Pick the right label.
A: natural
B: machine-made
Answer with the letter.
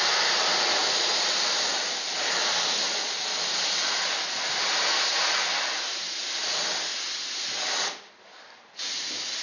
A